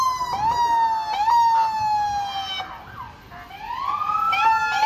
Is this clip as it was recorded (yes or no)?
yes